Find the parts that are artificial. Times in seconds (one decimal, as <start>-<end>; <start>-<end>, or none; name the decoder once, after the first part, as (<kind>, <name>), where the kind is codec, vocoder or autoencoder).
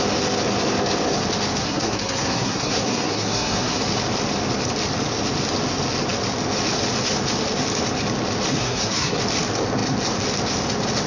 1.6-3.8 (codec, SNAC); 8.6-9.2